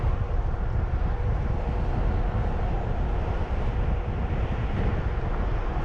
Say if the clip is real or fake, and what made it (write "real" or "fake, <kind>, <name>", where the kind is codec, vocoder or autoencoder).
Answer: real